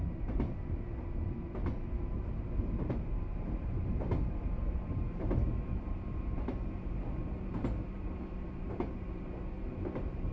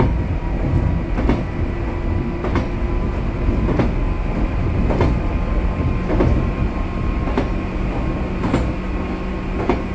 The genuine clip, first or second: second